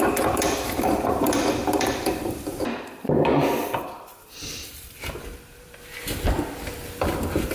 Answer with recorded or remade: remade